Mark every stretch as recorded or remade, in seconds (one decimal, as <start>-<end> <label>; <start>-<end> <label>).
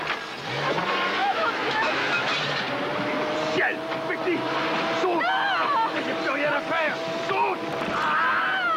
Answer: 0.0-1.2 recorded; 1.2-2.3 remade; 2.3-8.8 recorded